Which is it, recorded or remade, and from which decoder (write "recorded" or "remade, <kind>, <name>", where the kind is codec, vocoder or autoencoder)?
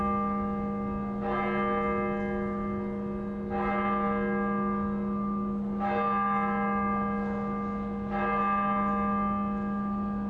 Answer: recorded